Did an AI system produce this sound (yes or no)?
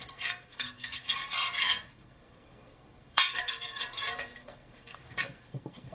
yes